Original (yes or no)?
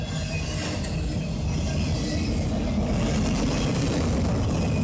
yes